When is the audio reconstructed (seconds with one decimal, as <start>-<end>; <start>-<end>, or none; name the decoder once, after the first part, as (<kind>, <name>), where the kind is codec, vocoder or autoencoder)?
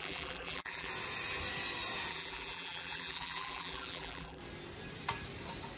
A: 0.0-0.9 (vocoder, BigVGAN v2); 2.1-4.4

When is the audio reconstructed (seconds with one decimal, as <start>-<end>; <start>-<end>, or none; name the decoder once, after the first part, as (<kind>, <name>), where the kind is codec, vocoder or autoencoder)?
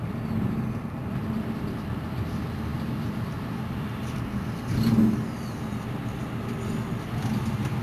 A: none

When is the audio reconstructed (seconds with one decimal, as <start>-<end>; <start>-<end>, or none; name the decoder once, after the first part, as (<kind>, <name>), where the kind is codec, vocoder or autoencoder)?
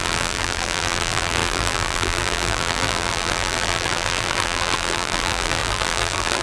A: 0.0-6.4 (vocoder, BigVGAN v2)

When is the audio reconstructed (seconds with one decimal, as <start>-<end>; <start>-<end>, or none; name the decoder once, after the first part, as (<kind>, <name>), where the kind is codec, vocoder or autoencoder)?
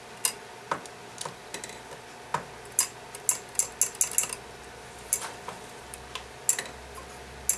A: none